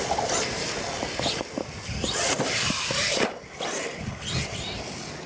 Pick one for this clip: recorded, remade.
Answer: recorded